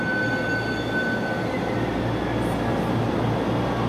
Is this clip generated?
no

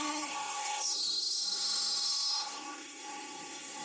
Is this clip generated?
yes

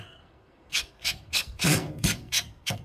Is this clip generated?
yes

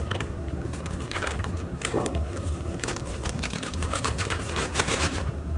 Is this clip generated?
yes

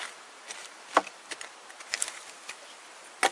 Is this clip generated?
no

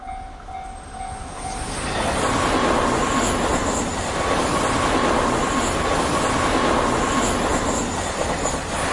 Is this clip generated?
no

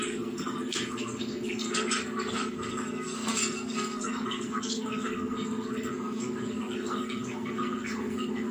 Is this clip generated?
yes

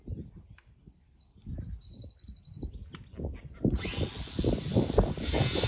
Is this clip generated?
no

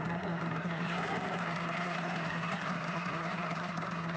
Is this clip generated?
yes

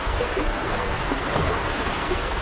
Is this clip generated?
yes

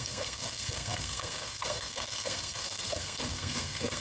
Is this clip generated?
yes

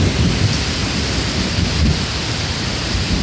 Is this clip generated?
no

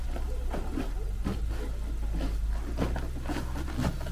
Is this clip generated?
no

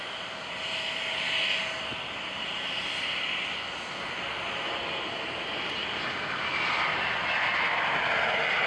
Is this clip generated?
no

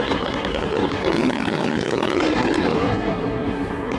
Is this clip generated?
yes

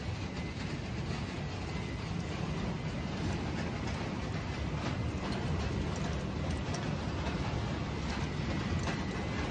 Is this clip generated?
no